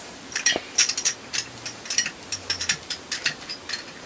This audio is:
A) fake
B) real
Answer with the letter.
A